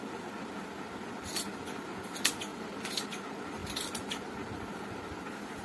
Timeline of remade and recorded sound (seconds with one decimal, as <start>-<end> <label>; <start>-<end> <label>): 0.0-5.6 recorded